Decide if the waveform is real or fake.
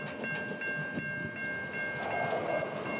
real